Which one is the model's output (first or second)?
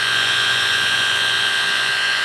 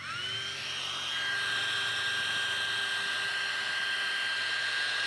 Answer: first